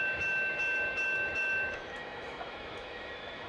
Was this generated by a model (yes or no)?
yes